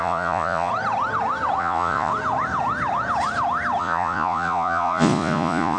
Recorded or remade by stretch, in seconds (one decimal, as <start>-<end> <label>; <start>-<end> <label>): 0.0-0.7 remade; 0.7-1.6 recorded; 1.6-2.1 remade; 2.1-3.8 recorded; 3.8-5.8 remade